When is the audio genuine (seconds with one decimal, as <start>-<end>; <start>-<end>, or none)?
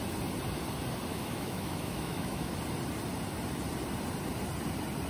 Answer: 0.0-1.1; 2.5-5.1